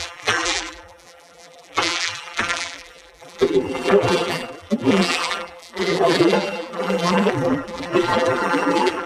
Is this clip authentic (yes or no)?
no